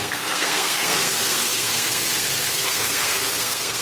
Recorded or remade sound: remade